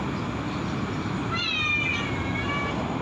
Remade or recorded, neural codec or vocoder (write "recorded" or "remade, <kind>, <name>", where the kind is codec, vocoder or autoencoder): recorded